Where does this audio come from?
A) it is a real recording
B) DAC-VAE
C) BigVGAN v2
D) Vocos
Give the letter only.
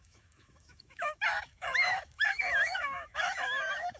B